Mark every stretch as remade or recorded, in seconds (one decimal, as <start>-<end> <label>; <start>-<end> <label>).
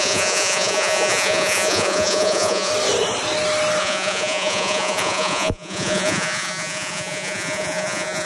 0.0-2.7 remade; 2.7-3.8 recorded; 3.8-8.2 remade